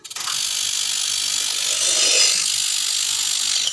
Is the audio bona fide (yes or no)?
yes